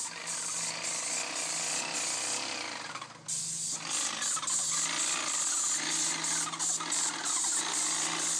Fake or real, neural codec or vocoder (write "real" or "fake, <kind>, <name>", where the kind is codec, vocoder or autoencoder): real